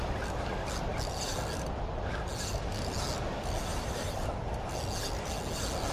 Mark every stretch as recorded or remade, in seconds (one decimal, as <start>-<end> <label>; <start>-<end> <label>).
0.0-3.7 recorded; 3.7-4.5 remade; 4.5-5.9 recorded